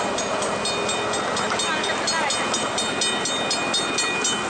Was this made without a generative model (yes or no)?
yes